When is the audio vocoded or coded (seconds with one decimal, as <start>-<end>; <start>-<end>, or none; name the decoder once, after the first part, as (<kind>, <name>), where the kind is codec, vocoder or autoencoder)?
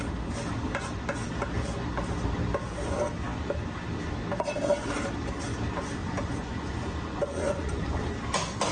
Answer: 6.0-8.1 (vocoder, Vocos)